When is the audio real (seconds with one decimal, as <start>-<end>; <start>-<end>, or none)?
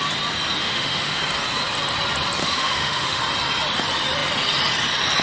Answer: 0.0-0.6; 1.2-2.4; 3.2-5.2